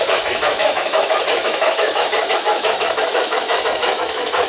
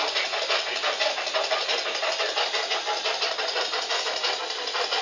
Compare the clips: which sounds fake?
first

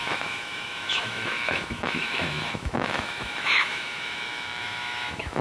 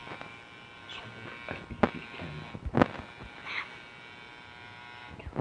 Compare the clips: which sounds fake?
first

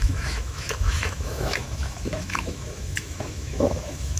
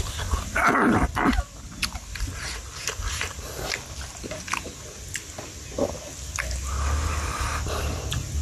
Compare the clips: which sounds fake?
first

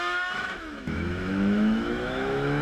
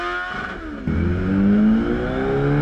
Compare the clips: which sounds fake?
first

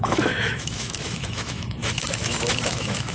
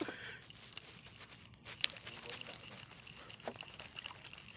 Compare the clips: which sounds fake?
first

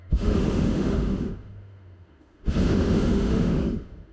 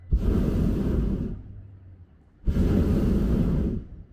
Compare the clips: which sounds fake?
first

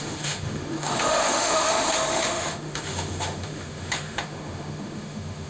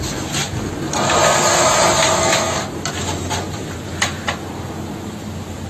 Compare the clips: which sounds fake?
first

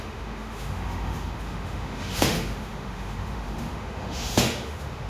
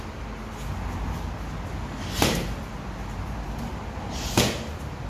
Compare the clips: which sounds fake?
first